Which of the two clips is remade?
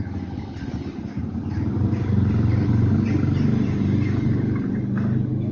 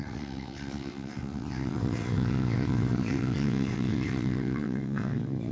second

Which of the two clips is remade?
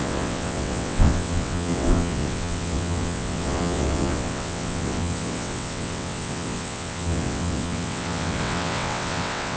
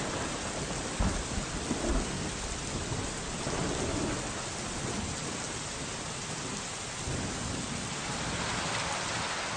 first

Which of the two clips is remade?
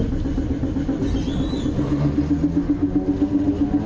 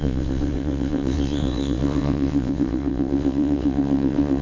second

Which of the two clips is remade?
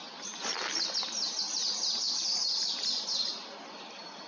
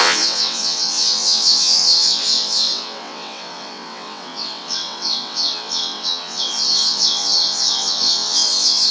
second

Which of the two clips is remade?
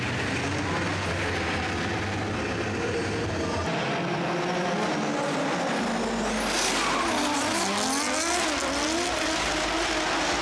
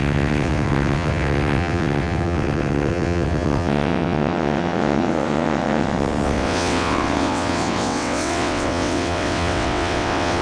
second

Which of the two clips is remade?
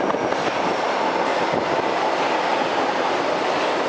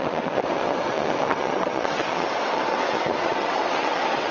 second